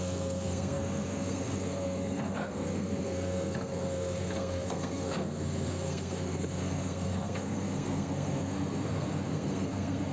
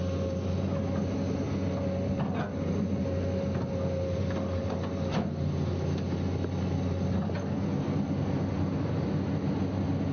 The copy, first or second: first